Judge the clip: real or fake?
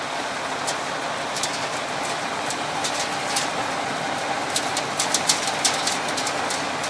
real